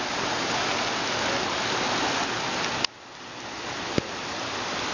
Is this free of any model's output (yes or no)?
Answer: yes